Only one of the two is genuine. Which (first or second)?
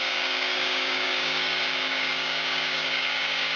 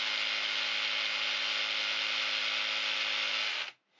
second